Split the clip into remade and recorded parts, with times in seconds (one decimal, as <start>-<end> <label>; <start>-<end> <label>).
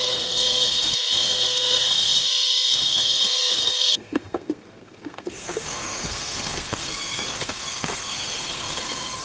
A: 0.0-9.2 remade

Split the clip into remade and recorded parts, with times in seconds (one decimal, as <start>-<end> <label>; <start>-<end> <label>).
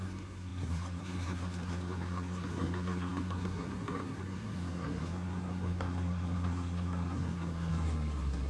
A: 0.0-8.5 remade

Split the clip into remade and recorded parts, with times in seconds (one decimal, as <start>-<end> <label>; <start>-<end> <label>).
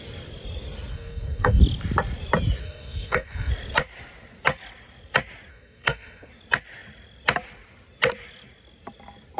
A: 0.0-0.9 recorded; 0.9-1.6 remade; 1.6-2.6 recorded; 2.6-3.5 remade; 3.5-5.5 recorded; 5.5-6.3 remade; 6.3-9.4 recorded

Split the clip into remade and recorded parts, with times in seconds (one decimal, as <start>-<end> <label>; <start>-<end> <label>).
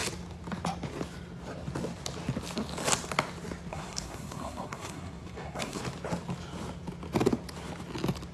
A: 0.0-3.7 recorded; 3.7-5.8 remade; 5.8-8.3 recorded